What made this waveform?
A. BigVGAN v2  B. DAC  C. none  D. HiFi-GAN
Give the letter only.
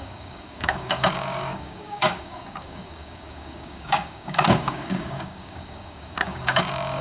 B